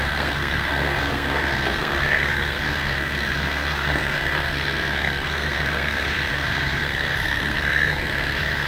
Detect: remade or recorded remade